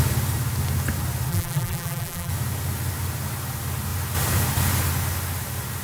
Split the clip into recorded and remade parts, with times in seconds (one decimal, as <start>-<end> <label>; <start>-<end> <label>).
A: 0.0-1.3 recorded; 1.3-2.3 remade; 2.3-5.8 recorded